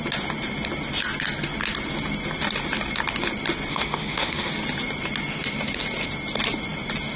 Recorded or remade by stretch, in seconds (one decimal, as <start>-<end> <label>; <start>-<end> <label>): 0.0-3.7 recorded; 3.7-4.5 remade; 4.5-7.2 recorded